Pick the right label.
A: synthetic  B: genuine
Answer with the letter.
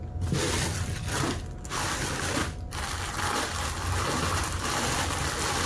B